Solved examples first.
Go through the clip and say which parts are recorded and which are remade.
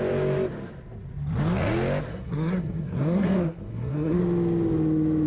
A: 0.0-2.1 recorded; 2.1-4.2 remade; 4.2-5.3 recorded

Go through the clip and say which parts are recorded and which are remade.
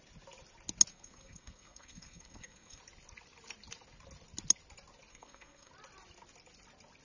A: 0.0-0.9 recorded; 0.9-2.8 remade; 2.8-5.1 recorded; 5.1-5.7 remade; 5.7-7.0 recorded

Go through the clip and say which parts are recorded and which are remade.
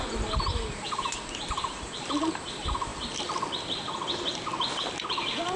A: 0.0-5.6 recorded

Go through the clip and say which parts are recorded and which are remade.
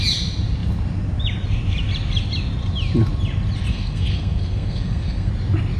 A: 0.0-3.7 recorded; 3.7-5.3 remade; 5.3-5.8 recorded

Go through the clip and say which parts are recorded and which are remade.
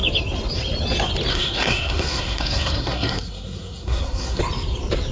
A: 0.0-1.3 recorded; 1.3-4.4 remade; 4.4-5.1 recorded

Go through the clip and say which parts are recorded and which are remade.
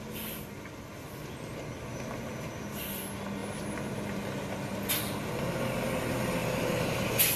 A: 0.0-7.4 recorded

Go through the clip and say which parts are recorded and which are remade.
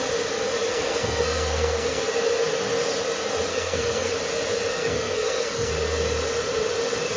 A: 0.0-0.7 recorded; 0.7-2.0 remade; 2.0-3.5 recorded; 3.5-4.1 remade; 4.1-4.7 recorded; 4.7-5.7 remade; 5.7-7.2 recorded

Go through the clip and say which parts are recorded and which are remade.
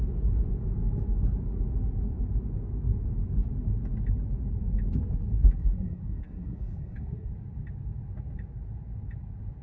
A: 0.0-5.3 recorded; 5.3-7.3 remade; 7.3-9.6 recorded